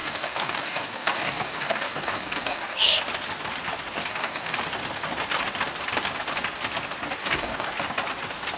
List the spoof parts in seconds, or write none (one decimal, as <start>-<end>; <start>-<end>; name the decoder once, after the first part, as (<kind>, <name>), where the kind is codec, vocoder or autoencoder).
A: 0.0-3.0 (codec, DAC); 4.1-4.6; 7.2-7.7